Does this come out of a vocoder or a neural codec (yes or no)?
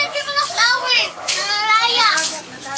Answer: yes